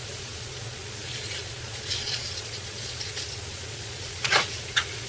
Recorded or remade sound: remade